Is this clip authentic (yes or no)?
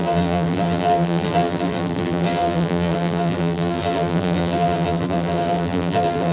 no